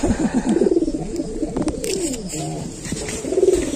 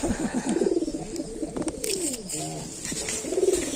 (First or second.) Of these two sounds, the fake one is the first